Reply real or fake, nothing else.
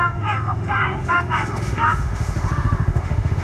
fake